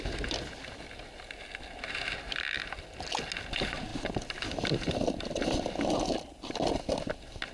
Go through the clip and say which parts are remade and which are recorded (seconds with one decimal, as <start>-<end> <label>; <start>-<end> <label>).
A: 0.0-7.5 recorded